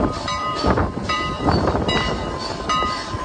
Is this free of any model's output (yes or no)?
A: no